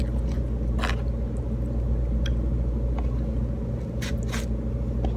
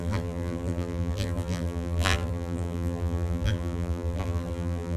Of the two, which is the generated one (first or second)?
second